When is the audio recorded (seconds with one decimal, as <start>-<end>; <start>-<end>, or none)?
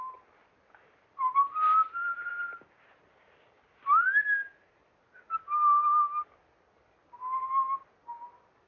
0.0-8.7